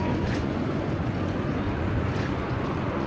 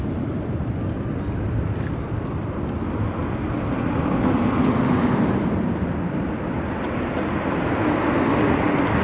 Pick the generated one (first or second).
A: first